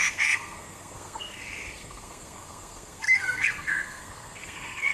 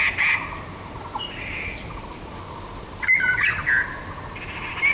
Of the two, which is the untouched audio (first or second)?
second